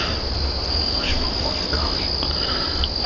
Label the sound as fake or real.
real